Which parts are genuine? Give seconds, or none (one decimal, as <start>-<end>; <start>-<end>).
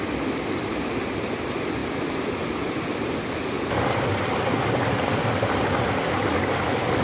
0.0-7.0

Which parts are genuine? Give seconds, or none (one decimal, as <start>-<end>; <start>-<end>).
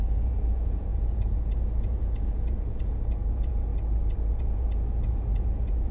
3.7-4.3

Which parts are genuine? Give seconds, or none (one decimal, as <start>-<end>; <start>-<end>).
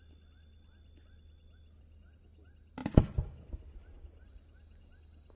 0.0-5.4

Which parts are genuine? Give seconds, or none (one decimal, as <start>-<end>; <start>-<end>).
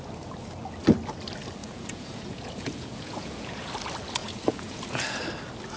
0.0-1.6; 3.7-4.2; 5.2-5.8